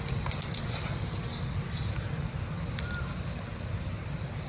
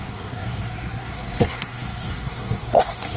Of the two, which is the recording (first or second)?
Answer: first